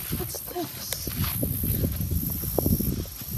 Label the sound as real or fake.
real